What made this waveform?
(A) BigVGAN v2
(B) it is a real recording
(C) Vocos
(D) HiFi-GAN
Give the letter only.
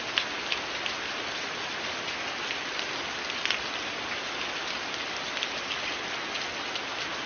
B